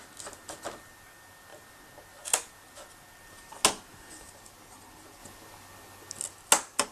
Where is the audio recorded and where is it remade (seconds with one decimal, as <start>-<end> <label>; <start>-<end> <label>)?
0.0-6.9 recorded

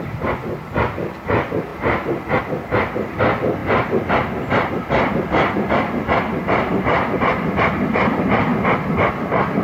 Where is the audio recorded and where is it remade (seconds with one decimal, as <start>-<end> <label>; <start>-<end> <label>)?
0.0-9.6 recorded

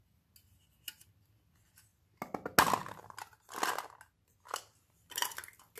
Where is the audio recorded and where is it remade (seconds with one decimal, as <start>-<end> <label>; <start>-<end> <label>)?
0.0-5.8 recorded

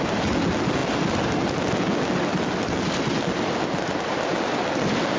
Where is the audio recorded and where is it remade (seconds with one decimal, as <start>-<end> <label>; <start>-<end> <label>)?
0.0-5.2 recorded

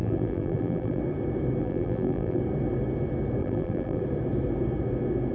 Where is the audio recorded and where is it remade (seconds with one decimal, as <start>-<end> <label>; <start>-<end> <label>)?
0.0-1.0 remade; 1.0-1.6 recorded; 1.6-2.4 remade; 2.4-3.4 recorded; 3.4-4.0 remade; 4.0-5.3 recorded

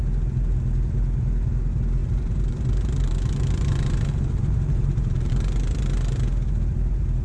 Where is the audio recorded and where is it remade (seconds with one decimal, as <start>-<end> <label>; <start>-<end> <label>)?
0.0-2.0 recorded; 2.0-5.3 remade; 5.3-7.2 recorded

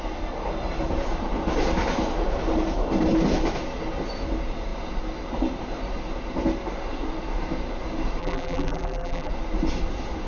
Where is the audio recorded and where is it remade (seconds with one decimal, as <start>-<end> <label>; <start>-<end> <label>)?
0.0-8.2 recorded; 8.2-9.3 remade; 9.3-10.3 recorded